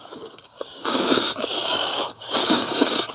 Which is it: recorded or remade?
remade